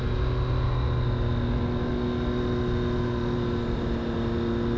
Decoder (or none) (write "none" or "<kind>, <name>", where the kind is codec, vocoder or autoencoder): none